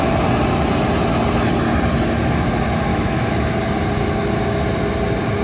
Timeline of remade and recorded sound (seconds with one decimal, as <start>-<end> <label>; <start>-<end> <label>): 0.0-2.9 recorded; 2.9-3.5 remade; 3.5-5.4 recorded